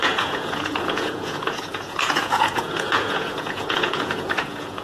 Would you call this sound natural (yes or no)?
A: no